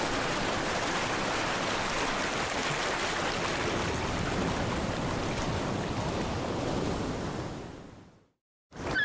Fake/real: real